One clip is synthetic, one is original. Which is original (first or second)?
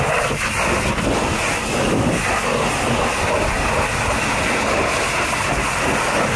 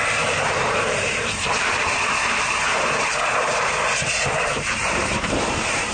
first